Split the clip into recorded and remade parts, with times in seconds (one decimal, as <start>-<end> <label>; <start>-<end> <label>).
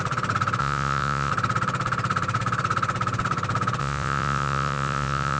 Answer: 0.0-0.6 recorded; 0.6-1.3 remade; 1.3-3.8 recorded; 3.8-5.4 remade